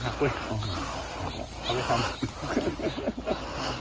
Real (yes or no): yes